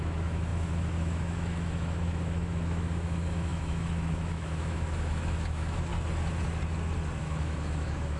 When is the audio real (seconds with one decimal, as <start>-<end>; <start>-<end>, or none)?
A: 5.9-7.2